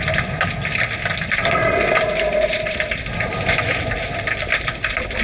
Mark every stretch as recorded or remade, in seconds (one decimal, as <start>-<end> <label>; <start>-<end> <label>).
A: 0.0-3.3 recorded; 3.3-3.8 remade; 3.8-5.2 recorded